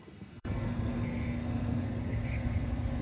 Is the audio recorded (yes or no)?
no